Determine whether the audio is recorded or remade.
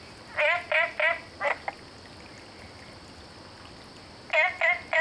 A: recorded